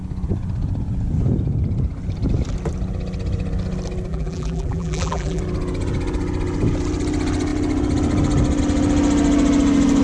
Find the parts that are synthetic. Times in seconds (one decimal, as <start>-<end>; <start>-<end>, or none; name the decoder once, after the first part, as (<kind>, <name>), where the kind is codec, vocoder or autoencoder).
4.1-5.4 (vocoder, BigVGAN v2)

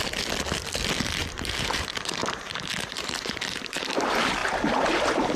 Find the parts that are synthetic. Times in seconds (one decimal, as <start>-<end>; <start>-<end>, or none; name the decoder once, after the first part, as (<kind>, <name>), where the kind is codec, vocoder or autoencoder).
1.2-3.9 (vocoder, BigVGAN v2)

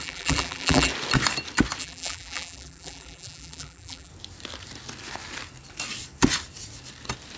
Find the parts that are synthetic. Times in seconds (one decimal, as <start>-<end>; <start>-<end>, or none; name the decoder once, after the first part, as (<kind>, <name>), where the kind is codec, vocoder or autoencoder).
0.0-0.9 (vocoder, BigVGAN v2); 1.8-4.1

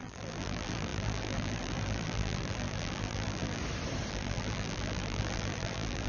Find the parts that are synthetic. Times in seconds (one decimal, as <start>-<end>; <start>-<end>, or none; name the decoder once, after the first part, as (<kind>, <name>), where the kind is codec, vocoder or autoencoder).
0.0-3.6 (vocoder, BigVGAN v2); 4.1-6.1